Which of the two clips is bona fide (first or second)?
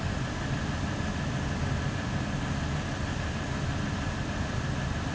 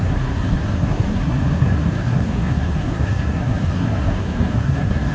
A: first